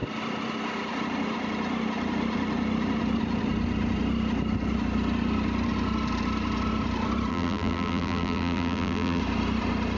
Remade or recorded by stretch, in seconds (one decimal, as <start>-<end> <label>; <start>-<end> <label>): 0.0-7.3 recorded; 7.3-9.2 remade; 9.2-10.0 recorded